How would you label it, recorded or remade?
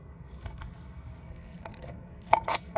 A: remade